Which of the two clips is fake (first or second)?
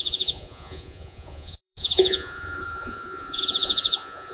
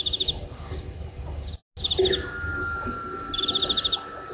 first